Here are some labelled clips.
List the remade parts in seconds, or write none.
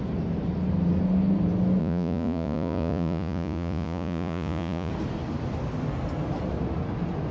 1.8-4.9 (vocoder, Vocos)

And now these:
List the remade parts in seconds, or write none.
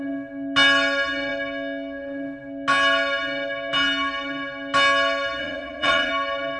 5.4-6.1 (vocoder, Vocos)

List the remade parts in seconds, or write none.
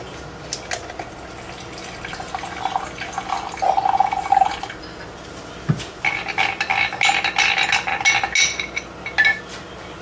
none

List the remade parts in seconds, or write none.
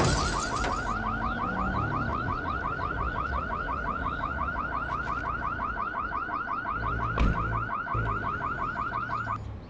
2.1-4.6 (vocoder, Vocos)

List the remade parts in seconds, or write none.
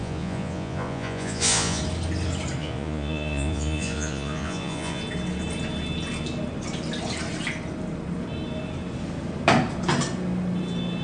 0.0-1.8 (vocoder, Vocos); 2.6-5.0